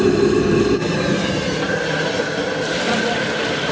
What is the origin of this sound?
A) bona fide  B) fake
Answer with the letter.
A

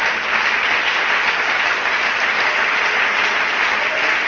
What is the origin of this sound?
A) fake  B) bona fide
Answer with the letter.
B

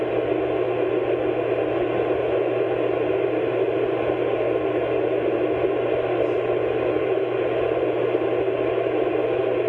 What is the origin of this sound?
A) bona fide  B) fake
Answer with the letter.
A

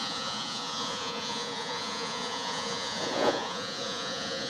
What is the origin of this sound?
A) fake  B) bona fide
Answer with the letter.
A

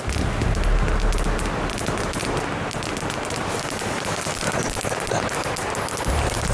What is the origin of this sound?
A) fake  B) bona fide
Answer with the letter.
B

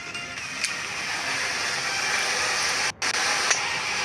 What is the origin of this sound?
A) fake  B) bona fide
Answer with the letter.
B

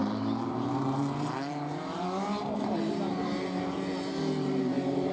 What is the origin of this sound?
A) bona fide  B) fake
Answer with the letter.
B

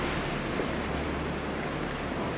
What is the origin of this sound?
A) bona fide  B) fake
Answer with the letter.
B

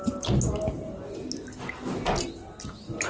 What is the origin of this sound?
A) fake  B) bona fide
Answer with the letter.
B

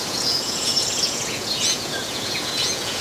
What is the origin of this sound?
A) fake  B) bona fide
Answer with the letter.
A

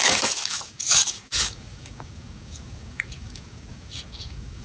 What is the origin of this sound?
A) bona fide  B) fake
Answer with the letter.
B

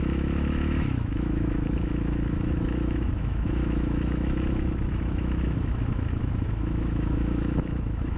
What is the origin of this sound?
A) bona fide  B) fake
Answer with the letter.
B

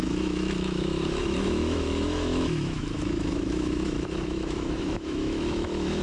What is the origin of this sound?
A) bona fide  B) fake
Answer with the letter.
B